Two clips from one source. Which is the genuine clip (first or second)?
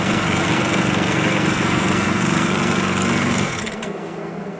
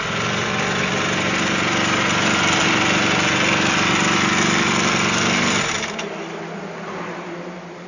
second